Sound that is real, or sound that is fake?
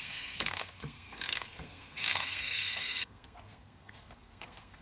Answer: fake